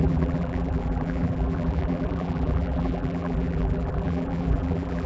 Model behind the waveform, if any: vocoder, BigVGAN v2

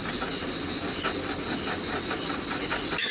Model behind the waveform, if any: none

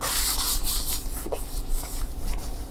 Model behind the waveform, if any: none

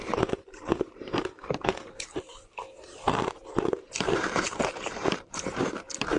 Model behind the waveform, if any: vocoder, BigVGAN v2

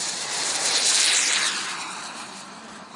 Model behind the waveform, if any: vocoder, BigVGAN v2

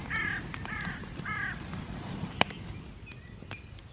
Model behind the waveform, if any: none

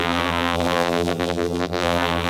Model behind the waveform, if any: vocoder, BigVGAN v2